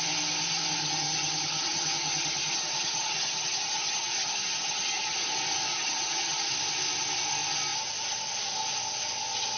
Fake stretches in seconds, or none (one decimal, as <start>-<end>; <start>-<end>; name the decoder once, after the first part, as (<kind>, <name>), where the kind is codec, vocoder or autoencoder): 0.8-5.3 (vocoder, HiFi-GAN); 5.7-6.5